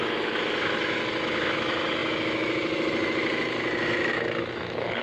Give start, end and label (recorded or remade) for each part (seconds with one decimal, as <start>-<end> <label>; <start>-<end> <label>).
0.0-5.0 remade